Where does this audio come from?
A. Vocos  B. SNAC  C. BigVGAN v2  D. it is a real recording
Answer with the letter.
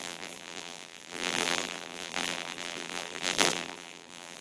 C